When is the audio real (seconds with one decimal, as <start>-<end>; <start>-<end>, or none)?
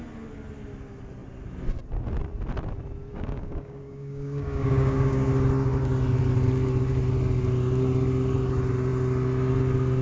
0.0-3.1; 5.3-10.0